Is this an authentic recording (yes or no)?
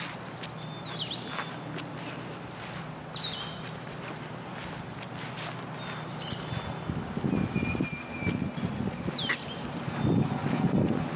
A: yes